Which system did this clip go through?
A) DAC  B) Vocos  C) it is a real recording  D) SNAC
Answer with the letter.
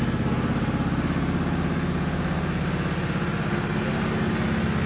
C